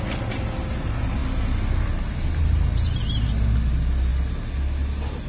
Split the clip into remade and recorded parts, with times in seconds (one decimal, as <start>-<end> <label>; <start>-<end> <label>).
0.0-5.3 recorded